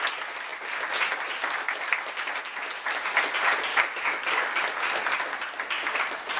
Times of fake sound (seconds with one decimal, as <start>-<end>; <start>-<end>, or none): 3.7-4.6

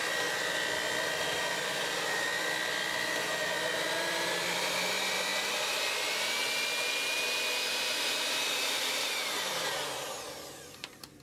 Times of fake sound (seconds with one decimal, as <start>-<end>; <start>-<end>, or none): 1.2-5.3; 7.7-11.2

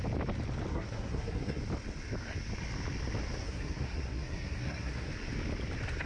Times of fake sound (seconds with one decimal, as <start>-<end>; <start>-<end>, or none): 0.7-1.6; 3.4-5.1

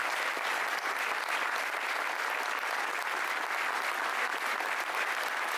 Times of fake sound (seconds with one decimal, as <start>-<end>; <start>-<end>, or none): none